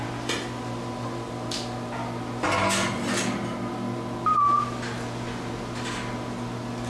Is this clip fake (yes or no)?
no